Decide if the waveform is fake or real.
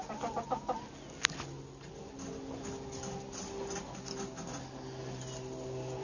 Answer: real